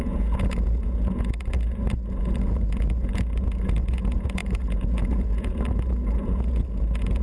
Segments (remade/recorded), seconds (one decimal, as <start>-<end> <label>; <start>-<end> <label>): 0.0-7.2 remade